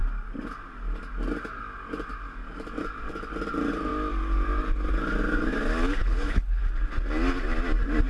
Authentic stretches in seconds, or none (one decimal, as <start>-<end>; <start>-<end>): 0.0-6.0; 6.6-8.1